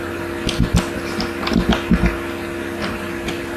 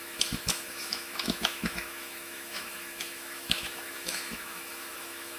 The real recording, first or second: first